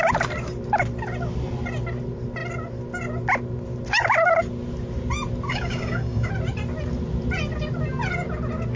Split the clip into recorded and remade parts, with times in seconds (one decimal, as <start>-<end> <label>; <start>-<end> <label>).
0.0-5.5 recorded; 5.5-6.3 remade; 6.3-8.8 recorded